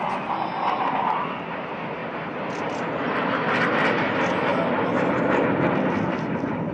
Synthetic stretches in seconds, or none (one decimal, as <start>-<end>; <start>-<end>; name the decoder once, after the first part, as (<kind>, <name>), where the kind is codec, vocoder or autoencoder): none